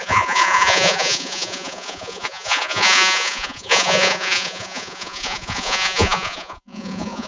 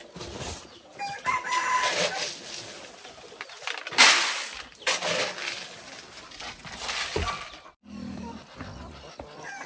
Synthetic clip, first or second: first